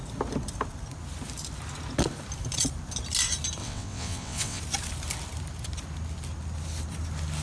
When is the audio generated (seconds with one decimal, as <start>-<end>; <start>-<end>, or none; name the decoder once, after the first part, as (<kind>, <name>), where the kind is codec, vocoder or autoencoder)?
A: 3.6-4.6 (vocoder, WaveNeXt)